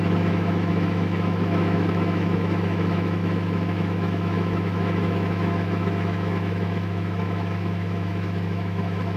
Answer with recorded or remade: remade